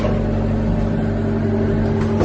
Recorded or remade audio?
recorded